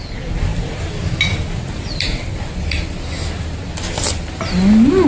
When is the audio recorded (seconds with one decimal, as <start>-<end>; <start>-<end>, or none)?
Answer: 0.0-5.1

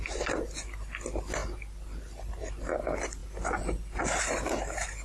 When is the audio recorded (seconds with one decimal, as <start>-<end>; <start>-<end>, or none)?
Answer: 0.0-5.0

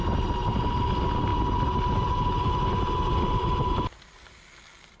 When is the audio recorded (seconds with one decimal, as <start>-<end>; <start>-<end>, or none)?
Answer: 0.0-5.0

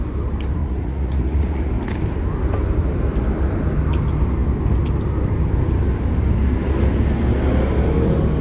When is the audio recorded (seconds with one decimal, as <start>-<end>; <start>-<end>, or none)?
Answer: 0.0-0.6; 1.7-8.4

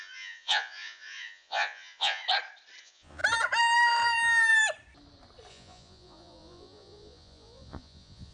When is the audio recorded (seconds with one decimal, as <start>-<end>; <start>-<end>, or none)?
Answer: 2.2-2.8; 3.2-5.5

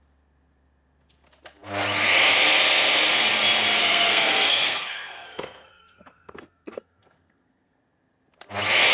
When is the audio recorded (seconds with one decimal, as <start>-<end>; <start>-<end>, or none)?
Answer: 0.0-3.8; 7.8-8.9

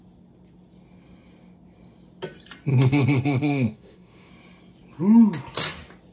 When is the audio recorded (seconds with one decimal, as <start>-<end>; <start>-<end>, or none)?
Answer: 0.0-2.7; 4.3-6.1